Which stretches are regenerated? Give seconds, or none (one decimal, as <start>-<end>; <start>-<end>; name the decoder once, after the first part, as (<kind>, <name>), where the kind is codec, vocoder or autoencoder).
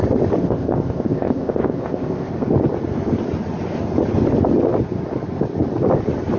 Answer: 0.4-2.3 (codec, ZipCodec)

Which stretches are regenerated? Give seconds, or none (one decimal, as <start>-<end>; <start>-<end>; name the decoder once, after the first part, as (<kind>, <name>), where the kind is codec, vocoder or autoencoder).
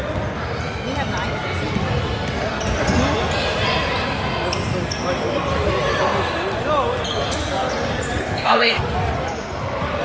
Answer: 8.2-8.8 (codec, ZipCodec)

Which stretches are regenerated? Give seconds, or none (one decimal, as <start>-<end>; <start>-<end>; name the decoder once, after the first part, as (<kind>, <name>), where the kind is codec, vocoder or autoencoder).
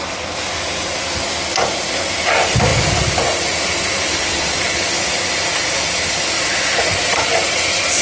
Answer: none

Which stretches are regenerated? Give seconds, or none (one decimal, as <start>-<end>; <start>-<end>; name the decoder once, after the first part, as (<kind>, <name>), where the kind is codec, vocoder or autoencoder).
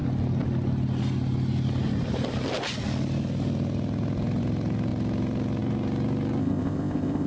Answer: 6.4-7.3 (codec, ZipCodec)